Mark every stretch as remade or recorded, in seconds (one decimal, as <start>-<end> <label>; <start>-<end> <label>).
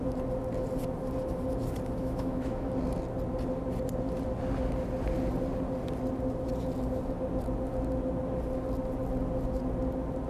0.0-2.0 recorded; 2.0-2.7 remade; 2.7-10.3 recorded